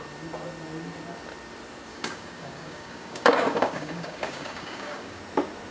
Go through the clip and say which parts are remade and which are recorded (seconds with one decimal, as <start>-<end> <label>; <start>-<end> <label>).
0.0-1.9 recorded; 1.9-5.2 remade; 5.2-5.7 recorded